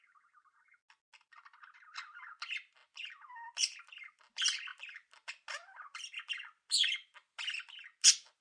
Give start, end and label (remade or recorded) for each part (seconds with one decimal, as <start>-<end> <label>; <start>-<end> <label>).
0.0-8.4 recorded